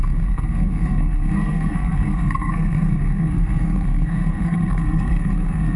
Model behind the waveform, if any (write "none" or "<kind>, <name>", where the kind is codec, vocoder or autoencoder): codec, SNAC